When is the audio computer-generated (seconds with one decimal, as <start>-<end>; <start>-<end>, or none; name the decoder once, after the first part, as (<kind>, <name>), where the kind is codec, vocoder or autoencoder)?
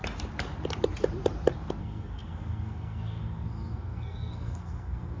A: 1.8-5.2 (codec, SNAC)